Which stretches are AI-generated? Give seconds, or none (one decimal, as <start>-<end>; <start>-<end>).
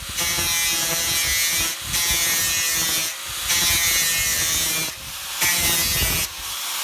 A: none